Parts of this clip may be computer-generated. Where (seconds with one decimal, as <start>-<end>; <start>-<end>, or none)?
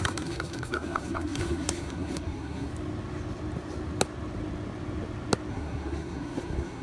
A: 0.0-2.7; 5.5-6.8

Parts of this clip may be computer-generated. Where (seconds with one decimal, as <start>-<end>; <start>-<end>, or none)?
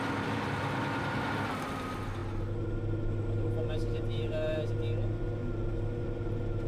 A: none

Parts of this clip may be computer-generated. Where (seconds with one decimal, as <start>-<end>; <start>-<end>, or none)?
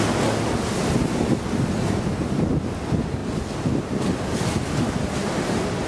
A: none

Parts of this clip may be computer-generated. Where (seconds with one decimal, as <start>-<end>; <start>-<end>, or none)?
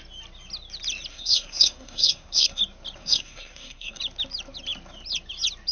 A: 1.1-2.6; 3.0-4.0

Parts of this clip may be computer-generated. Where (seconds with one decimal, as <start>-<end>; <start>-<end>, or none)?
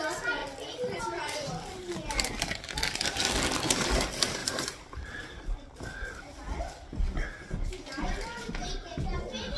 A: 4.4-6.6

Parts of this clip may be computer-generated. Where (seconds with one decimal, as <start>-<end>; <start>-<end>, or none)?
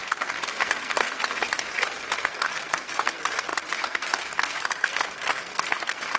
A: 0.0-6.2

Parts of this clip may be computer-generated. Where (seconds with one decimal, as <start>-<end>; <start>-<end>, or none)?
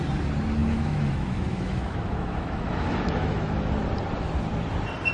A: 0.6-3.7